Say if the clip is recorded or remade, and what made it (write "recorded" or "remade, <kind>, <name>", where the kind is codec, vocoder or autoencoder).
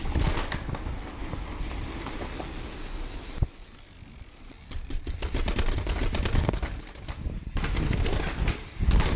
recorded